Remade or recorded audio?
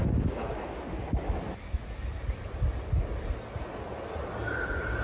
recorded